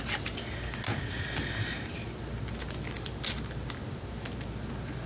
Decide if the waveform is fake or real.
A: real